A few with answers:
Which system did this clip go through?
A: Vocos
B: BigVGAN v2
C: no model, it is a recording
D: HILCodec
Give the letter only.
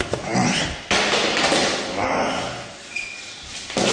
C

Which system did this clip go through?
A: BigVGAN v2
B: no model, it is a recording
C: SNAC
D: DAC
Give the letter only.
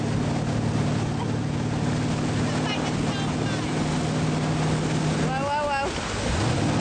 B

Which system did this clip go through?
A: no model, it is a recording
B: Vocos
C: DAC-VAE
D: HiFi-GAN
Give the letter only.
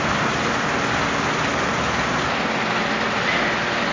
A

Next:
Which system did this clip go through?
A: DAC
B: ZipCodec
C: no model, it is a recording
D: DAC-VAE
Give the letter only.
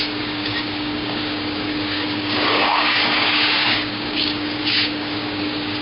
A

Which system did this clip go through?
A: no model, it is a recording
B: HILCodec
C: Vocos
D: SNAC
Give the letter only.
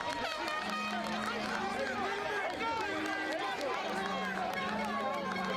A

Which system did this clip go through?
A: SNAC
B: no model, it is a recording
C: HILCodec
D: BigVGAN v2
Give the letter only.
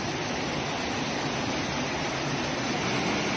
B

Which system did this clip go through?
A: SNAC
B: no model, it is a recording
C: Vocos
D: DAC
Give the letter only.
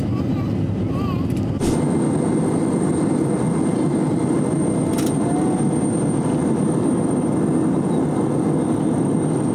B